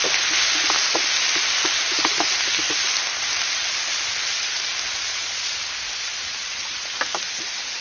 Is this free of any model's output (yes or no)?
yes